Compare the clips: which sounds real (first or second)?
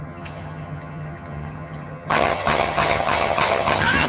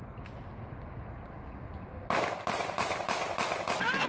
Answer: second